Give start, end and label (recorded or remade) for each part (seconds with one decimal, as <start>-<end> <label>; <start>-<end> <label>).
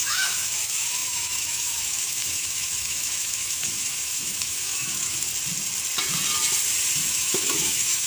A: 0.0-5.3 remade; 5.3-7.0 recorded; 7.0-8.1 remade